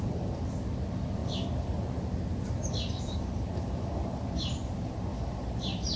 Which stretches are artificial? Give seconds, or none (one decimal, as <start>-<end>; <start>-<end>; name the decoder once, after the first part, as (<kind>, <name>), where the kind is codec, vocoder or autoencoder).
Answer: 5.1-6.0 (vocoder, BigVGAN v2)